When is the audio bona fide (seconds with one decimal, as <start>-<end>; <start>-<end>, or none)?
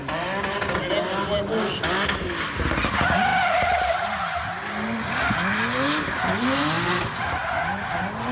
0.0-8.3